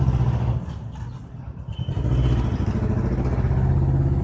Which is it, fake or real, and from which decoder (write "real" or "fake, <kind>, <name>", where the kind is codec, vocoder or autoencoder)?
real